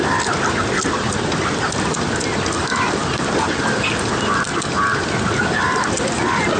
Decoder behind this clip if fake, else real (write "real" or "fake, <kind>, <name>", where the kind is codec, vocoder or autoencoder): real